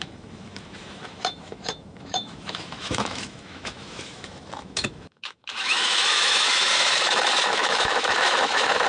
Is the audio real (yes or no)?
no